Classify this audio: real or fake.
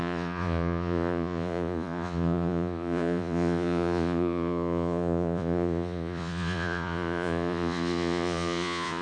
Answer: fake